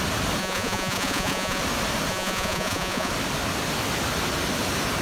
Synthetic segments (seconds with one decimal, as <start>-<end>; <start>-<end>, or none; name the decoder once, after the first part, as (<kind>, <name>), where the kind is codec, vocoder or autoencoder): 0.4-1.6 (vocoder, Vocos); 2.1-3.1